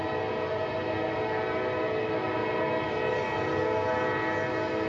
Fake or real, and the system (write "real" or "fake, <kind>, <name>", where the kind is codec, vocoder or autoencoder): real